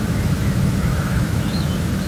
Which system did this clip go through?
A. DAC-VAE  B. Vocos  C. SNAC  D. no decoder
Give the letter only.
A